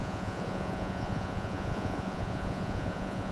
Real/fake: fake